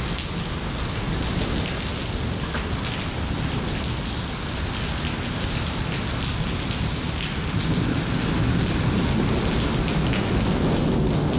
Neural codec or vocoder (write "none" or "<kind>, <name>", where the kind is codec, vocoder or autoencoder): none